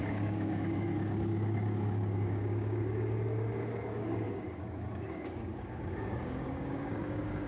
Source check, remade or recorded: remade